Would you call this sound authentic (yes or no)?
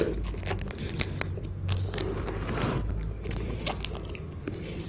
yes